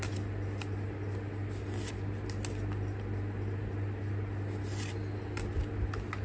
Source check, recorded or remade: recorded